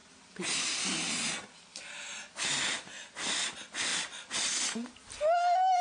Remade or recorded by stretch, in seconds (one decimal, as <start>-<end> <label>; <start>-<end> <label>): 0.0-5.8 recorded